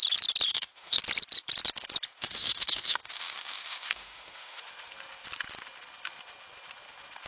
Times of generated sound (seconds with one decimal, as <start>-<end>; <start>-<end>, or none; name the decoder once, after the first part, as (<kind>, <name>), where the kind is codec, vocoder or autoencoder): 0.5-1.0 (autoencoder, DAC-VAE); 2.1-4.6

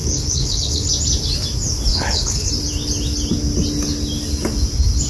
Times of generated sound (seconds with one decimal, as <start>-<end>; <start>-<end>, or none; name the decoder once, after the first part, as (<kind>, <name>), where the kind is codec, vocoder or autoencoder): 0.0-0.9 (codec, HILCodec); 1.9-2.5